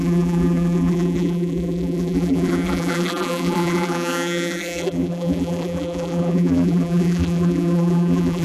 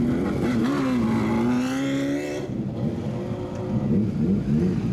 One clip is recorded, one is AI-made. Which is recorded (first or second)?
second